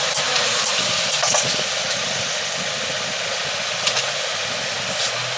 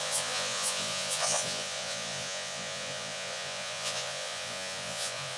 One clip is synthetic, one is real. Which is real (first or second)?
first